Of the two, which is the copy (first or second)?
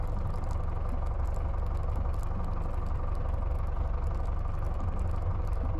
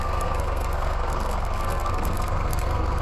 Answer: second